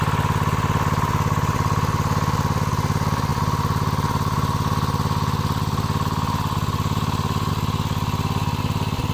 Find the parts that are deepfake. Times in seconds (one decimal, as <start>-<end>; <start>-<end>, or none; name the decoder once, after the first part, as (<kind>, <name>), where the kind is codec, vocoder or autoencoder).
none